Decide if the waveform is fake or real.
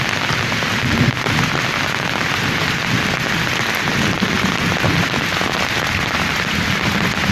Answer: real